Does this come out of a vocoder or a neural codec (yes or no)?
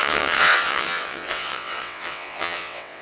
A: yes